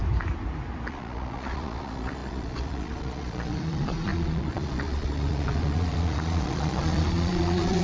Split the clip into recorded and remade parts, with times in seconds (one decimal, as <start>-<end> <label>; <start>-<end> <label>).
0.0-0.9 recorded; 0.9-7.8 remade